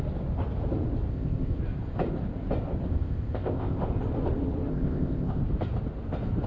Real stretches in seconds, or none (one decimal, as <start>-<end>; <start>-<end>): 0.0-1.1; 1.6-2.9; 3.8-4.7; 5.4-6.5